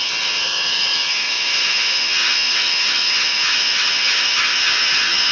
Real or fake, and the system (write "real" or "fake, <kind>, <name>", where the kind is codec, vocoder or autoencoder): fake, vocoder, HiFi-GAN